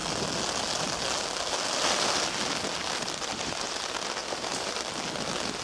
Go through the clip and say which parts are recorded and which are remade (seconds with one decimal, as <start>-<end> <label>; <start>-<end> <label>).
0.0-2.8 recorded; 2.8-3.8 remade; 3.8-4.2 recorded; 4.2-4.7 remade; 4.7-5.6 recorded